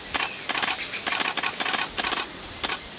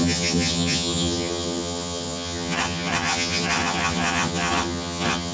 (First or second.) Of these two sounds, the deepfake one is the second